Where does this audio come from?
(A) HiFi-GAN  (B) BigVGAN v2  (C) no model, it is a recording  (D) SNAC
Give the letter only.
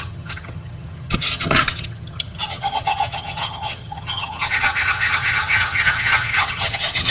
A